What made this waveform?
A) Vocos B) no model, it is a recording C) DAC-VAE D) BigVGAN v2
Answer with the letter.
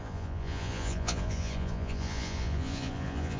A